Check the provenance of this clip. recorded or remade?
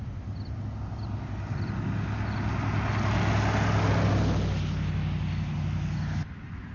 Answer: recorded